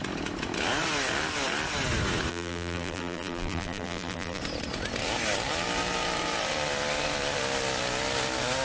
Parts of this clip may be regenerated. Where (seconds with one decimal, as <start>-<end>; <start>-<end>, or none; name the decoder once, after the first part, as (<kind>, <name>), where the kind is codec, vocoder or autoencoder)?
2.3-4.4 (vocoder, BigVGAN v2)